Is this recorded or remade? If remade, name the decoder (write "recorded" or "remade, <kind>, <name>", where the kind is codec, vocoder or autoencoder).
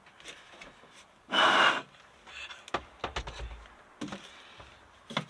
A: recorded